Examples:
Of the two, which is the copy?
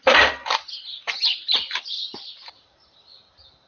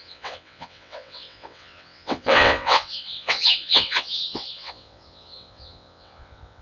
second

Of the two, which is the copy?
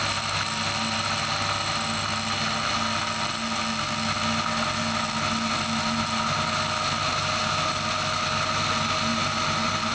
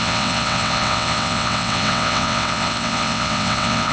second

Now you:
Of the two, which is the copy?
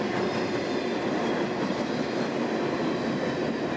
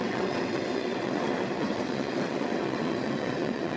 second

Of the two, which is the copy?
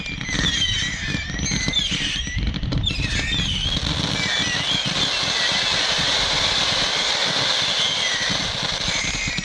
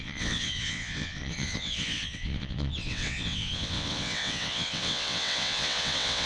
second